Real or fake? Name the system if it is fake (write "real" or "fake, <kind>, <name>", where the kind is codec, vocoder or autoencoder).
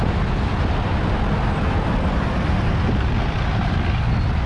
real